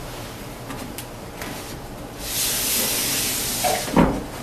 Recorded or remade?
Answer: recorded